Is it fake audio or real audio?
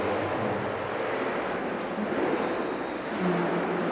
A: real